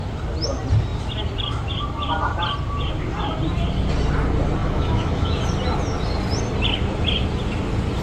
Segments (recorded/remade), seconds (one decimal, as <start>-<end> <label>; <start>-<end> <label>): 0.0-4.6 recorded; 4.6-5.4 remade; 5.4-8.0 recorded